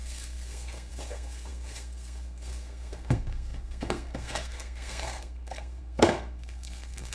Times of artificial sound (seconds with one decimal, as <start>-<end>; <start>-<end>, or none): 0.0-7.1